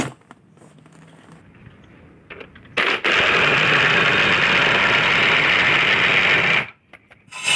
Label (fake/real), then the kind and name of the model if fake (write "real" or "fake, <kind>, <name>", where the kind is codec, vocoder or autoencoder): real